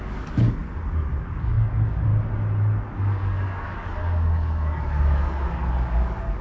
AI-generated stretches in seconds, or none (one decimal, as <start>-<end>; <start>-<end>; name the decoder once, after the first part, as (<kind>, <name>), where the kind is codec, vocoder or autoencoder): 0.0-0.6 (codec, DAC); 1.2-2.1; 3.0-6.4